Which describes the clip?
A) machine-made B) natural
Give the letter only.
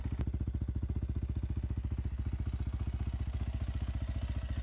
B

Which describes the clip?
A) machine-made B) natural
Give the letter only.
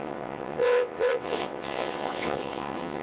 A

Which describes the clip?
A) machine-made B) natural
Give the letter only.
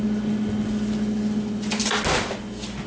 B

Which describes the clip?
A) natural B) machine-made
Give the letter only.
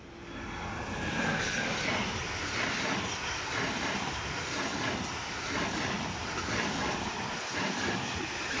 A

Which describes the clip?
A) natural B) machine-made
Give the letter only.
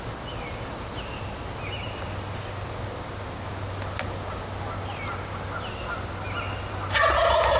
A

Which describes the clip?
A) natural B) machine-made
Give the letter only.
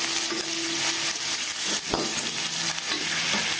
A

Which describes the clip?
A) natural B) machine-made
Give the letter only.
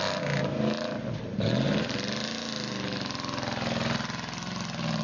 A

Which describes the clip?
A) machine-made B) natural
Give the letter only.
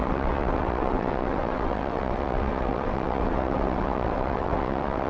A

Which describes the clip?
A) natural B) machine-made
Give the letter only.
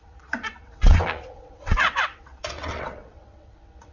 B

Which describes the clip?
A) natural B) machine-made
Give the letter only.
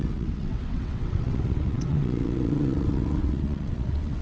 B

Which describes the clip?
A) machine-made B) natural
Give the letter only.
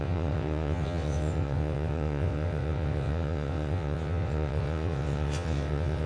A